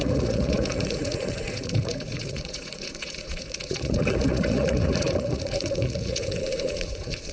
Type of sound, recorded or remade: remade